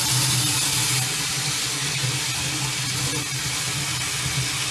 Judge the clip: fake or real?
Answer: real